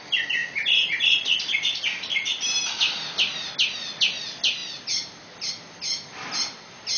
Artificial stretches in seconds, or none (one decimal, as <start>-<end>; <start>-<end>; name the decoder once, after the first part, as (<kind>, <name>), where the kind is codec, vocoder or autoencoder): none